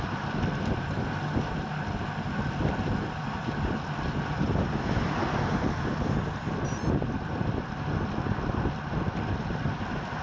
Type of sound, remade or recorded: recorded